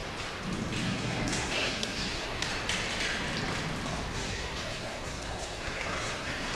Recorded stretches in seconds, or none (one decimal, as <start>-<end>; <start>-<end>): 0.0-0.8; 2.5-4.1